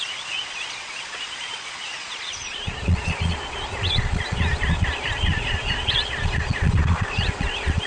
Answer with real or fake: fake